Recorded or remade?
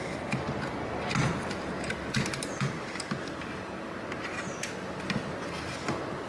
recorded